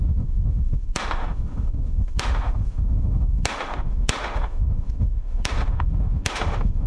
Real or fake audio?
fake